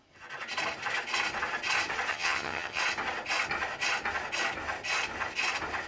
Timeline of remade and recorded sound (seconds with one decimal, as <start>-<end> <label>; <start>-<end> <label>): 0.0-2.1 recorded; 2.1-2.8 remade; 2.8-5.9 recorded